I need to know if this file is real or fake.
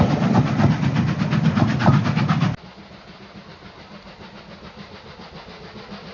real